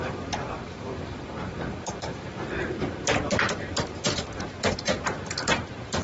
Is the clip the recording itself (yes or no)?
no